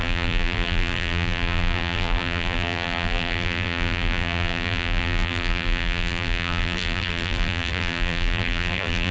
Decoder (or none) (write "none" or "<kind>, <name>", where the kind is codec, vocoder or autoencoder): vocoder, BigVGAN v2